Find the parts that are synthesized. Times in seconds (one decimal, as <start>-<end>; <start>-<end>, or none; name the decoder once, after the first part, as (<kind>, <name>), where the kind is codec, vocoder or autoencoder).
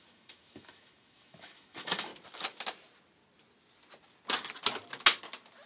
0.0-2.1 (autoencoder, DAC-VAE)